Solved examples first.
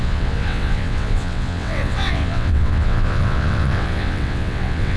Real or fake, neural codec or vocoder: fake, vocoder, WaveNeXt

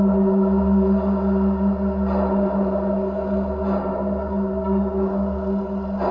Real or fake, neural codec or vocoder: real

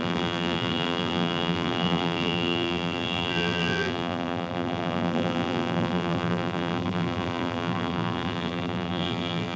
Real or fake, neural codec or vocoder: fake, vocoder, BigVGAN v2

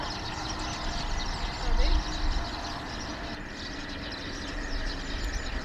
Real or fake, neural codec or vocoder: real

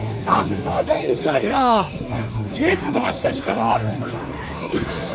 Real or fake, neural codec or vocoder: fake, codec, SNAC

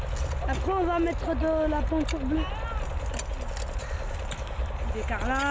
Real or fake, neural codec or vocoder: real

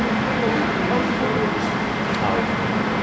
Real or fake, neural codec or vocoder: real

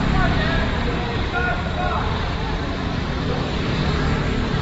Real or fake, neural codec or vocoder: fake, vocoder, BigVGAN v2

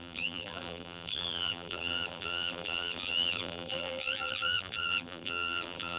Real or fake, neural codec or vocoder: fake, vocoder, BigVGAN v2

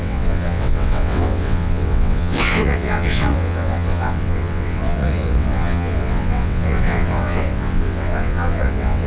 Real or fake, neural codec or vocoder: fake, vocoder, WaveNeXt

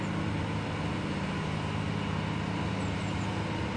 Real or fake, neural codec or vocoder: real